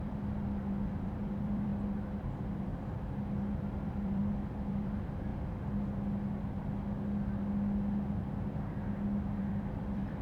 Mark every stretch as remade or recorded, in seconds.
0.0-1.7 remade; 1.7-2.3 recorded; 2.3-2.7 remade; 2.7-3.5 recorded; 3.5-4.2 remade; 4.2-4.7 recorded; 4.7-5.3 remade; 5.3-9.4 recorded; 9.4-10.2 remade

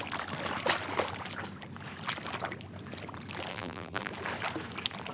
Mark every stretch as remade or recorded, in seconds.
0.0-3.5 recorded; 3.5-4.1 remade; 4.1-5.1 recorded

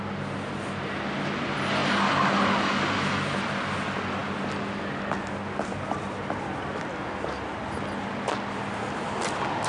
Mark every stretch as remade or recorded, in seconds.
0.0-9.7 recorded

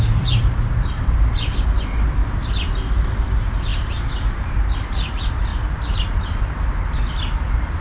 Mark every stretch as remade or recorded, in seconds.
0.0-2.2 remade; 2.2-3.2 recorded; 3.2-5.5 remade; 5.5-7.8 recorded